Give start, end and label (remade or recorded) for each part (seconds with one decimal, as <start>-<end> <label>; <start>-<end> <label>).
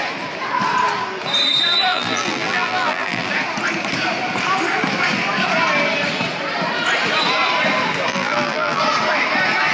0.0-1.9 recorded; 1.9-3.3 remade; 3.3-8.1 recorded; 8.1-8.8 remade; 8.8-9.7 recorded